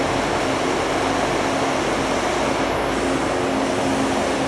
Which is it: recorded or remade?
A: recorded